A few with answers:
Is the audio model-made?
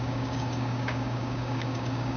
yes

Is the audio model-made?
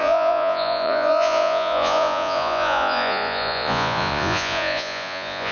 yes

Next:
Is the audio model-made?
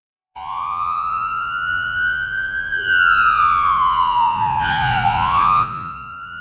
yes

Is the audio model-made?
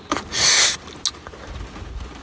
no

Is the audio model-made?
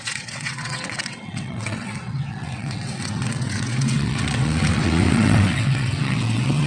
yes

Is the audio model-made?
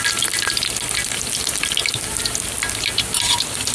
no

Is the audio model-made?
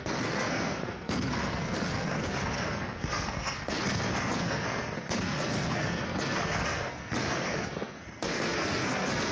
yes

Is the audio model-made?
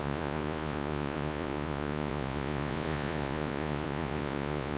yes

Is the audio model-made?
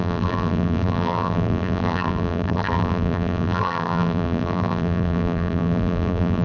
yes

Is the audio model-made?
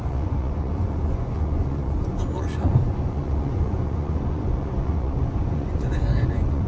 yes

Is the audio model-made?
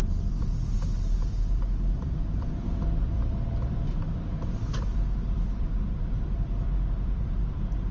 yes